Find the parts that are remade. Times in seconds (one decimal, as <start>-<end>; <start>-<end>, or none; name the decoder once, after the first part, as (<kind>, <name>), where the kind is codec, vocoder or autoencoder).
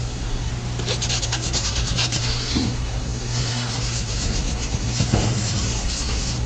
0.0-0.5 (codec, SNAC); 1.2-6.5